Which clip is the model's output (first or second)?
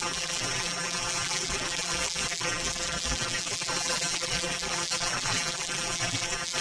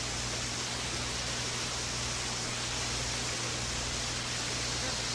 first